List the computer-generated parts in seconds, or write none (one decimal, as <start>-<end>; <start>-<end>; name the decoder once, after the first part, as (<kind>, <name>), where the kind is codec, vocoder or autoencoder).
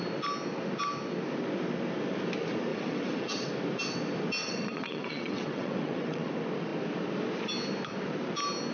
2.7-3.5 (vocoder, WaveNeXt); 4.4-6.3